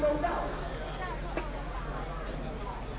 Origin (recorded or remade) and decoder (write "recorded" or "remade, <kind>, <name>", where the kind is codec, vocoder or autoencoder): recorded